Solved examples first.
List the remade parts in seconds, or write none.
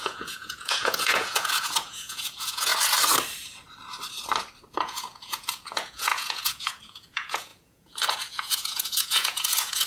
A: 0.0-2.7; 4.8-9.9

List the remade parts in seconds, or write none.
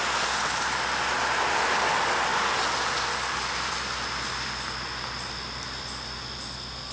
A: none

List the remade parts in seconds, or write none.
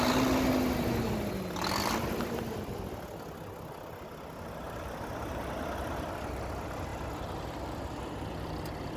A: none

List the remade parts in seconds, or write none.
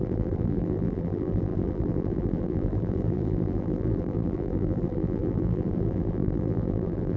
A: 0.0-7.2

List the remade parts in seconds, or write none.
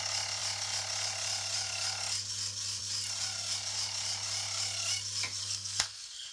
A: 5.4-6.3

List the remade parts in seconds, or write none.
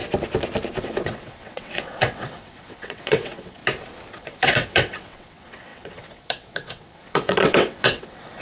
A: 0.8-3.6; 4.1-8.4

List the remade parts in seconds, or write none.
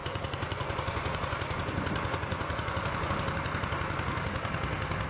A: 0.0-3.1